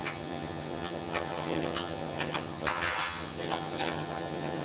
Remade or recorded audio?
remade